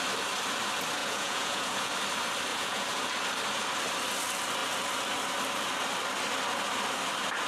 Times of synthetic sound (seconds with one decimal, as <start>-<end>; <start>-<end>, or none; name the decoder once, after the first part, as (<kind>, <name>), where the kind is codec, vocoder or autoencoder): 1.0-1.9 (vocoder, Vocos); 2.5-3.0